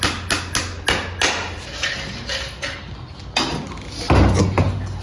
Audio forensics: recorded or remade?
recorded